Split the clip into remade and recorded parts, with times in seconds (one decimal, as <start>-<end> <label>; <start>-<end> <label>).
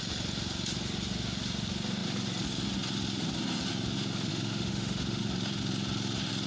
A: 0.0-4.3 recorded; 4.3-5.2 remade; 5.2-6.5 recorded